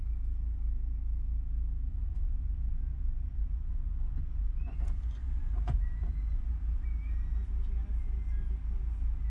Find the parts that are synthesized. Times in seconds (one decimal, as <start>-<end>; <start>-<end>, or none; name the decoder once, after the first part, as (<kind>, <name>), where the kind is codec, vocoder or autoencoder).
1.9-6.5 (vocoder, Vocos)